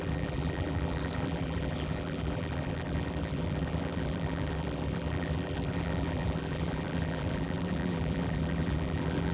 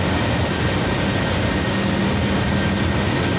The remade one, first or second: first